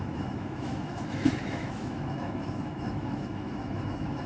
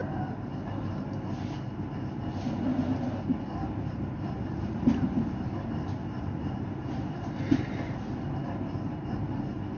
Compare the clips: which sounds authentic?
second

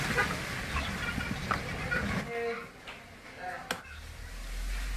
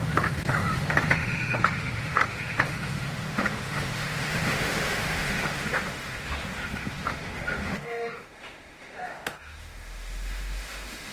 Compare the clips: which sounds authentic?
first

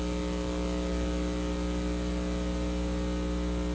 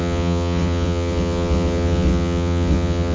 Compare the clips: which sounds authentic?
first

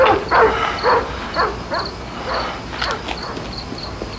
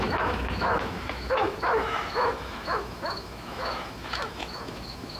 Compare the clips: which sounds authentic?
first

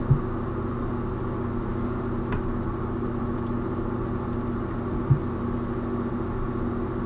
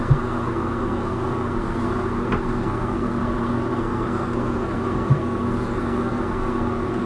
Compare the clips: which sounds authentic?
first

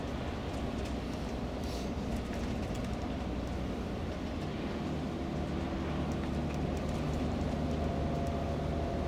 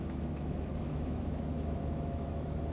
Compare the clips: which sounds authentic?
first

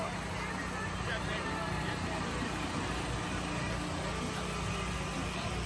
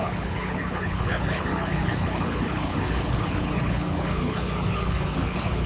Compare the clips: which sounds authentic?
first